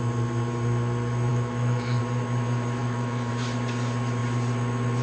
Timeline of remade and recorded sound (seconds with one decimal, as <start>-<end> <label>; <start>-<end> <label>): 0.0-1.3 recorded; 1.3-2.0 remade; 2.0-2.8 recorded; 2.8-3.3 remade; 3.3-5.0 recorded